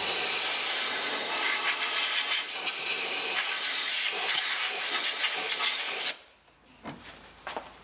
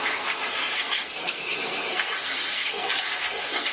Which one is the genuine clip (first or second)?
first